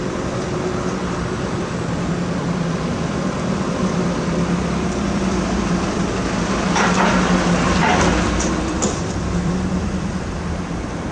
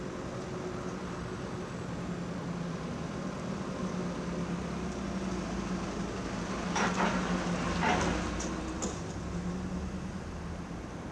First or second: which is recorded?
second